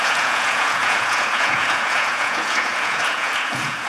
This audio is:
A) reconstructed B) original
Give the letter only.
A